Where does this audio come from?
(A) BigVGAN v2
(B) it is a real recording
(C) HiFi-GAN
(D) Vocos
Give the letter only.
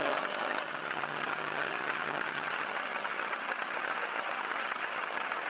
C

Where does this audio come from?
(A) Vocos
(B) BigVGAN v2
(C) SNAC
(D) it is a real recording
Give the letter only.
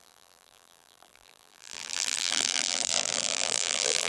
B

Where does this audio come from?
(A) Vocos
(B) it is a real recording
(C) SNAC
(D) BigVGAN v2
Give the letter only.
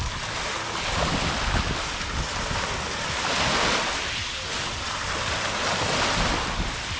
B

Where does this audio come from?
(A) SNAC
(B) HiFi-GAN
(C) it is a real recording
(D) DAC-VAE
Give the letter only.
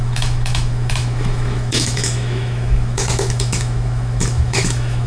D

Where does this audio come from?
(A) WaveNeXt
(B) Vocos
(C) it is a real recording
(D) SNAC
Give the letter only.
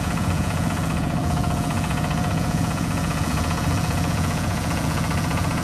B